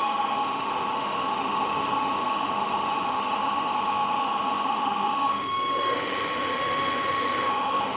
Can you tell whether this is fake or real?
fake